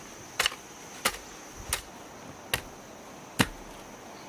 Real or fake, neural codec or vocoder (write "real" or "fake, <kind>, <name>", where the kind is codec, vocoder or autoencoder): real